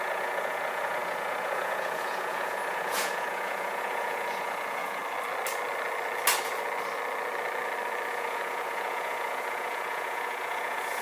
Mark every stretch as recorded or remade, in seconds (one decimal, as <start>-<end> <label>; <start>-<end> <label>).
0.0-5.0 remade; 5.0-8.1 recorded; 8.1-11.0 remade